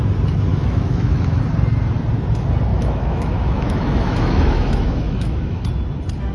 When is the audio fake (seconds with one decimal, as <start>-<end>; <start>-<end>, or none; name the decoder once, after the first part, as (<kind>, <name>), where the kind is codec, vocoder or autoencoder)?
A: 0.5-1.4 (autoencoder, DAC-VAE); 2.7-5.6